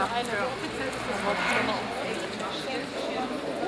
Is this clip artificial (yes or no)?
no